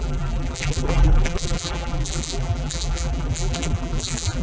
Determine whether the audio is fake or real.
fake